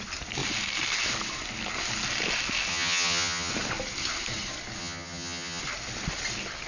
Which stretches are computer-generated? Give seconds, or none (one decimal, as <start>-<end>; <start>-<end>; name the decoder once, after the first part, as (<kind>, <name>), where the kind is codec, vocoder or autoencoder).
2.7-3.5 (vocoder, HiFi-GAN); 4.8-5.6